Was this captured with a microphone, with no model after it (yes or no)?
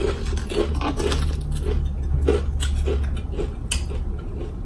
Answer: yes